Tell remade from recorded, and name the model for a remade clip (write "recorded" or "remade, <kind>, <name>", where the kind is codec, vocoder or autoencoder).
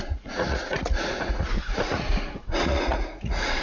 remade, vocoder, Vocos